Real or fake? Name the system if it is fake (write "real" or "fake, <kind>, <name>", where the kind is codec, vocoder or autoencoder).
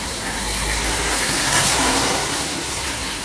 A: fake, codec, SNAC